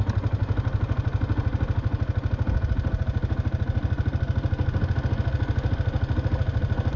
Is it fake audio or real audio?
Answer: real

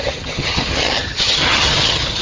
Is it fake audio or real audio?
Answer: fake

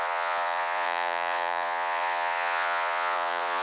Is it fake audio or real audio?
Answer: fake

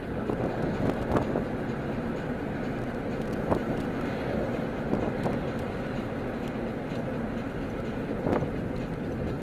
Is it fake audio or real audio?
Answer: real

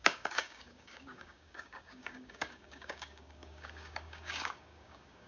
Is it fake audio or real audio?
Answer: fake